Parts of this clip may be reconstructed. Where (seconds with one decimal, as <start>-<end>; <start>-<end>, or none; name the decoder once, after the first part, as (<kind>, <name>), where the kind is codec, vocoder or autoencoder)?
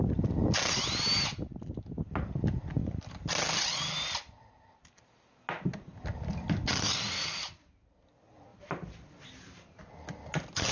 8.5-9.8 (vocoder, BigVGAN v2)